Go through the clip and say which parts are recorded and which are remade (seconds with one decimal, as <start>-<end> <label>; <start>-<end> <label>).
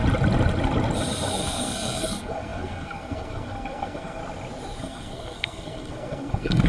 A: 0.0-1.3 recorded; 1.3-4.2 remade; 4.2-4.8 recorded; 4.8-6.7 remade